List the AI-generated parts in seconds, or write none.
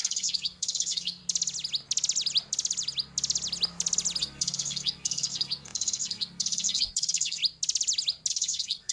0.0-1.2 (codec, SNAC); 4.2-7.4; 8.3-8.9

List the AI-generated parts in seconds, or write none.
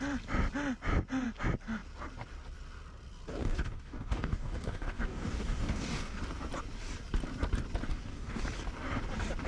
3.4-6.2 (codec, DAC); 7.9-8.4